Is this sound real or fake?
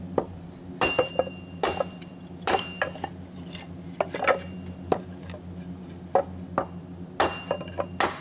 real